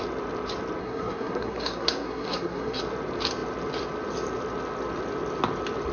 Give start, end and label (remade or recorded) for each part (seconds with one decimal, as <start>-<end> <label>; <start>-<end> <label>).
0.0-0.8 recorded; 0.8-2.8 remade; 2.8-5.9 recorded